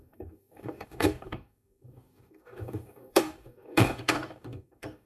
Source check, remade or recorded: remade